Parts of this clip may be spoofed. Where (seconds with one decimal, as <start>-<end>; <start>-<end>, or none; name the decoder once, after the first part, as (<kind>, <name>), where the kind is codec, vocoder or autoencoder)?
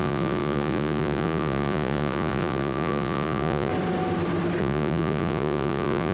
0.0-3.7 (vocoder, Vocos); 4.6-6.1